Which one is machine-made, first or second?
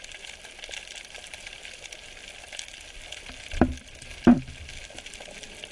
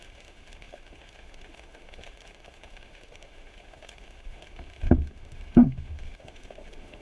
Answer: second